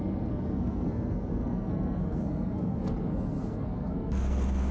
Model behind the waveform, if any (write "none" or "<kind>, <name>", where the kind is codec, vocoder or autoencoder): codec, SNAC